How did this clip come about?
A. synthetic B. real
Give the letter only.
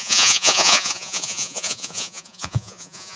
A